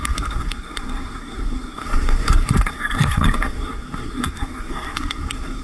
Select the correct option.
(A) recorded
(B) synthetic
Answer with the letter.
B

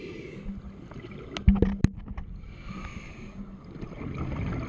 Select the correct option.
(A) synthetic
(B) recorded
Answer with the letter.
B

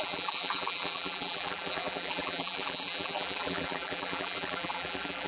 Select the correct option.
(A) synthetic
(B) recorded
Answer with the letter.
A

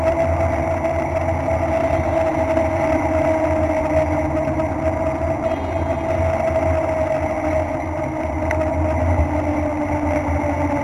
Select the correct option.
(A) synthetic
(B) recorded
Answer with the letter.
B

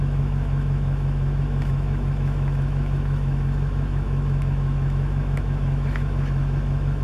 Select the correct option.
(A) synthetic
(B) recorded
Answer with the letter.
A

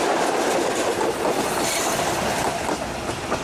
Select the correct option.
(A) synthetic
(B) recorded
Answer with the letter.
A